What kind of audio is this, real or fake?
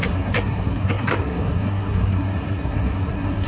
fake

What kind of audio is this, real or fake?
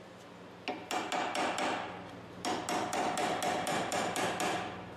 real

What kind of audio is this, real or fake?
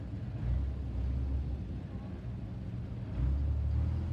real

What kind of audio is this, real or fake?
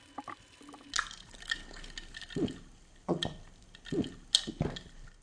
real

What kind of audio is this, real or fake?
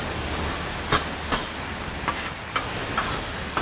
real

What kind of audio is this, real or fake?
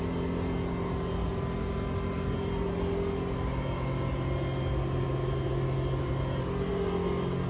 real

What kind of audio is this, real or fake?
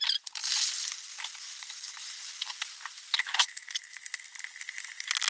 real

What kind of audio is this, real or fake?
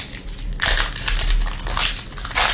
real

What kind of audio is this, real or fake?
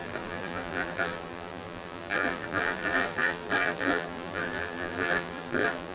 fake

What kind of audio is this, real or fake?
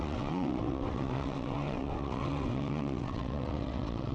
fake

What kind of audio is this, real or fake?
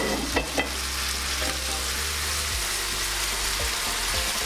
real